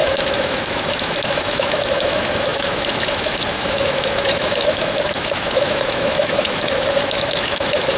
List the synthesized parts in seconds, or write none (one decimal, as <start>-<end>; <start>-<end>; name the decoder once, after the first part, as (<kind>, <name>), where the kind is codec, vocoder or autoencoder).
0.0-8.0 (autoencoder, DAC-VAE)